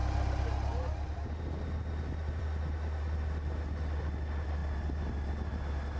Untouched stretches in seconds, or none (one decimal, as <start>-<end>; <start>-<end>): 0.0-4.6; 5.3-6.0